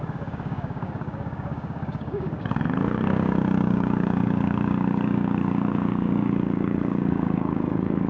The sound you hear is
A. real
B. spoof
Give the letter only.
B